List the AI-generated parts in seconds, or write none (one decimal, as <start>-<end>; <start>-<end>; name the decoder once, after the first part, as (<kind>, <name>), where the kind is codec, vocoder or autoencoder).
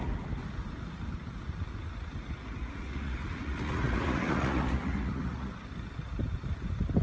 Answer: 2.6-5.5 (vocoder, Vocos)